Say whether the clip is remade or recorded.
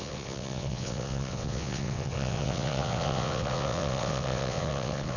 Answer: remade